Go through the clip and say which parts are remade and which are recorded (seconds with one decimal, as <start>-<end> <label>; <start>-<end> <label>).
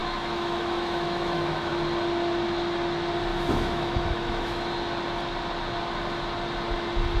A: 0.0-1.7 remade; 1.7-3.3 recorded; 3.3-4.7 remade; 4.7-7.2 recorded